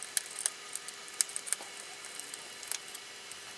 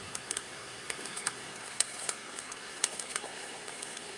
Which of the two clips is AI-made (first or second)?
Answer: second